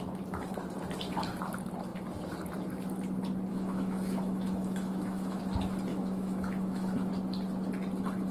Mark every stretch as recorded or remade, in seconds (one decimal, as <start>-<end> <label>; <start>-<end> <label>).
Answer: 0.0-3.5 recorded; 3.5-5.4 remade; 5.4-5.9 recorded; 5.9-7.1 remade; 7.1-8.3 recorded